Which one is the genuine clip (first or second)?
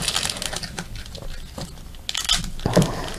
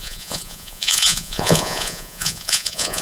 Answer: first